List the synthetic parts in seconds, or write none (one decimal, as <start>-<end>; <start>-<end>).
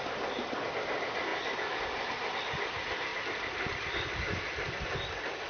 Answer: none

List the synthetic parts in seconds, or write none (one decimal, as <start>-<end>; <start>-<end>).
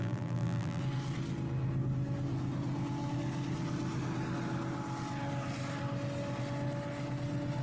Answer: 0.0-0.8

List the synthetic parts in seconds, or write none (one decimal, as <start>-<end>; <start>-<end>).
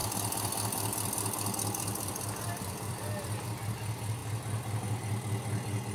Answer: 0.0-3.5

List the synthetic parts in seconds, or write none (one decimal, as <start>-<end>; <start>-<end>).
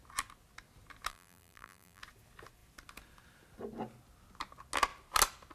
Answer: 1.1-2.0